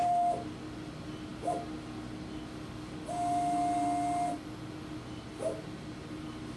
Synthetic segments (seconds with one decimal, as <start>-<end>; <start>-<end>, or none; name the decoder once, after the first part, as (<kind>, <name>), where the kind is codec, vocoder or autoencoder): none